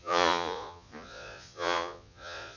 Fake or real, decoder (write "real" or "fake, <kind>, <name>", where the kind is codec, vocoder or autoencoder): fake, vocoder, Vocos